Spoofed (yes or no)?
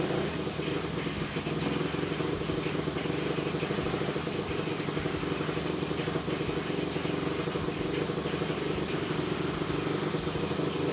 no